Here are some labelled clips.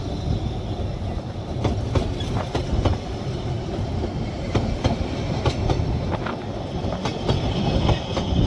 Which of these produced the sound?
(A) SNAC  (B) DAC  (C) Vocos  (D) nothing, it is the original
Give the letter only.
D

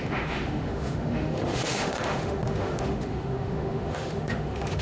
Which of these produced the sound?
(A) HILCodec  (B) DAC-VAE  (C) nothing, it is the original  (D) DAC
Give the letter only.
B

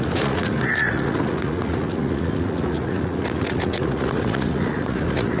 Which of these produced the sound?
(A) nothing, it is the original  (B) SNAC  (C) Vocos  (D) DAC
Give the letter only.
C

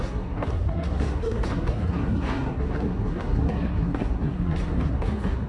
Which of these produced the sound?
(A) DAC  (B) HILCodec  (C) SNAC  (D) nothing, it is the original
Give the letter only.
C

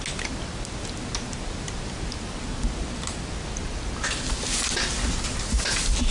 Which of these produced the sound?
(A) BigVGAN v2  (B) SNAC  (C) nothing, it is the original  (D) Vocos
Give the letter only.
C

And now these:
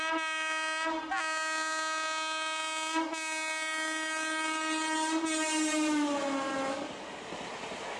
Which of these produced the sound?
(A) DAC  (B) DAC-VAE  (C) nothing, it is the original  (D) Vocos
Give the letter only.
C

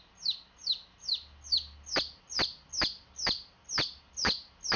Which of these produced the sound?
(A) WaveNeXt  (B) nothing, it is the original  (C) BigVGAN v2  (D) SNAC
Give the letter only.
B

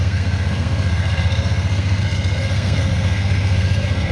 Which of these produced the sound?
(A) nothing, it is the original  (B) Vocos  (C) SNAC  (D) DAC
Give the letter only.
C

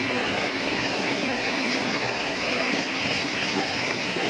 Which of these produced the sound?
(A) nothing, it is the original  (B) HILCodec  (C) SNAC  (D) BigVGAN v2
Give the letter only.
C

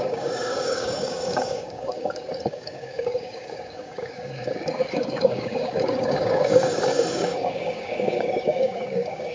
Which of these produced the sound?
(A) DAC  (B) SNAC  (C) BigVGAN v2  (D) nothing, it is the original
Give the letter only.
A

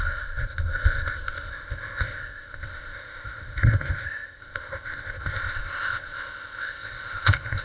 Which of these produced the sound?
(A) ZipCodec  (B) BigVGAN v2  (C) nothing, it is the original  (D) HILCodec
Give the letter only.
A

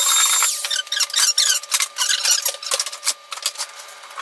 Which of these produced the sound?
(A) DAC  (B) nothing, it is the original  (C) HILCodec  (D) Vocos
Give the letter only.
B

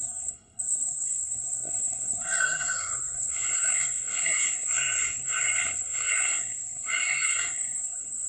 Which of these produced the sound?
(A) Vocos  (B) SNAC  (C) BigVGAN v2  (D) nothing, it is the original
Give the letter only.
B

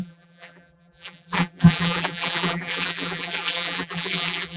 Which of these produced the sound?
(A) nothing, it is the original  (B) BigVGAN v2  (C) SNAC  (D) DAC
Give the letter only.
B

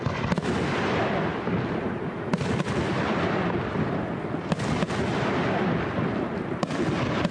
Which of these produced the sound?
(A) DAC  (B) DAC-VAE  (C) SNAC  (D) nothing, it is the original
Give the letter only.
D